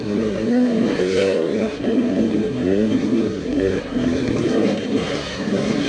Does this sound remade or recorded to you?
remade